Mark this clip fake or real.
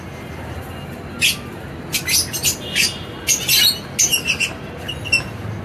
real